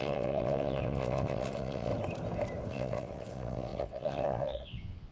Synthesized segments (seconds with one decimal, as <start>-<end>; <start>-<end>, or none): 0.0-1.9; 2.7-5.1